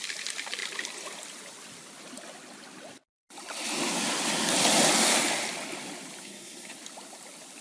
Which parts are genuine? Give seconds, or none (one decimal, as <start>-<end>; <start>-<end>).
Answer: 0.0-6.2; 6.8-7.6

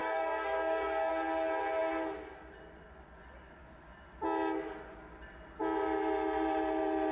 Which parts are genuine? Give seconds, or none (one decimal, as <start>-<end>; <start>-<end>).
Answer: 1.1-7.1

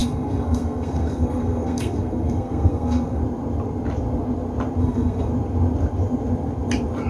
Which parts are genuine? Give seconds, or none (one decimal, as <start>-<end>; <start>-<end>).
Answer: 3.2-4.8; 5.3-7.1

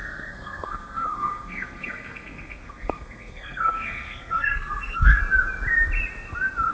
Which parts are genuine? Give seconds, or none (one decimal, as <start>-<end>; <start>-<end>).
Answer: 5.2-6.7

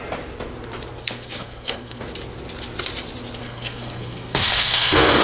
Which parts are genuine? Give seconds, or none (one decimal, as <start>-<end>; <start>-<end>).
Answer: 0.0-1.0; 2.0-3.4